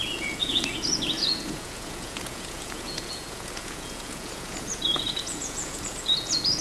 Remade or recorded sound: remade